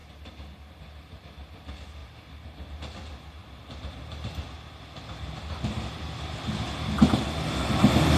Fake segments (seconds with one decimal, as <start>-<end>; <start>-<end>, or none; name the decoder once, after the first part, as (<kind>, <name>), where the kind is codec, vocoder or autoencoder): none